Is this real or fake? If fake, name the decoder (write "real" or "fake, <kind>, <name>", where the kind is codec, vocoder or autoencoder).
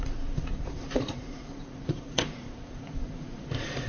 fake, vocoder, Vocos